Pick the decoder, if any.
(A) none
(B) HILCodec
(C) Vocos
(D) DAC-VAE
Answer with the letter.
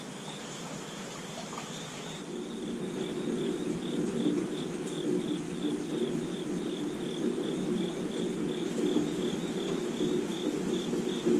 A